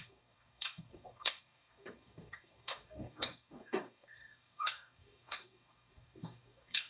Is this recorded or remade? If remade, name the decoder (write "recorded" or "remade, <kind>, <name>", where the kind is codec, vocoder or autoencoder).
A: remade, codec, DAC